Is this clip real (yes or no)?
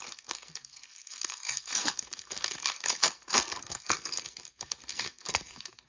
no